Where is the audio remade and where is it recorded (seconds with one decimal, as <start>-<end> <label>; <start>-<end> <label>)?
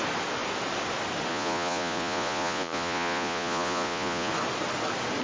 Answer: 0.0-1.3 recorded; 1.3-4.3 remade; 4.3-5.2 recorded